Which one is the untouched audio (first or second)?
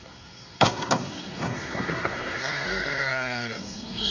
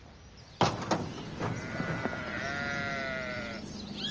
second